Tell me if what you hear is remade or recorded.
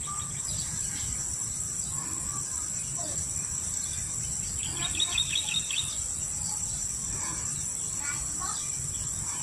recorded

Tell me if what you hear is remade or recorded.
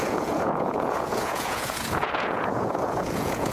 remade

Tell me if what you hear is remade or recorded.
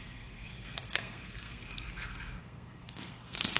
remade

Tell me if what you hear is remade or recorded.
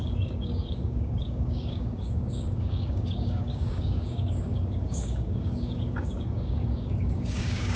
remade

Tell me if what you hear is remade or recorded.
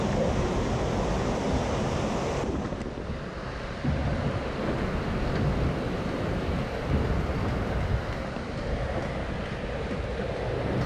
recorded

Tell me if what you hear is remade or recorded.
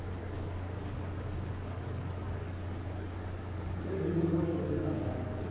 remade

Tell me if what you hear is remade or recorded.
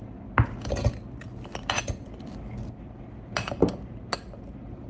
recorded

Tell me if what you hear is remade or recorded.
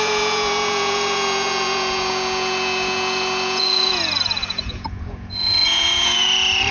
remade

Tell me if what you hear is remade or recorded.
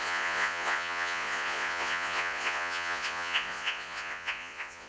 remade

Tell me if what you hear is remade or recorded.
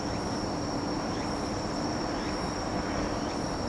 remade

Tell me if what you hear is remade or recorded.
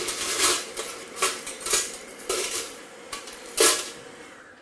remade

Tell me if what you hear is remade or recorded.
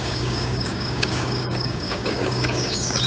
remade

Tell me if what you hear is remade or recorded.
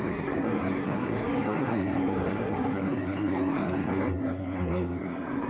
remade